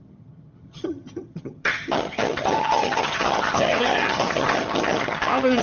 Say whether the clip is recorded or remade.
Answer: remade